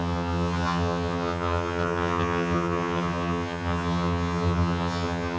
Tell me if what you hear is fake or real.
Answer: fake